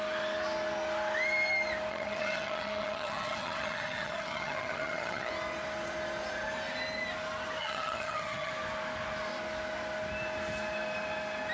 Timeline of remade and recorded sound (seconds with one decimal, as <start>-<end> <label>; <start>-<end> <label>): 0.0-1.9 recorded; 1.9-5.3 remade; 5.3-7.6 recorded; 7.6-8.5 remade; 8.5-11.5 recorded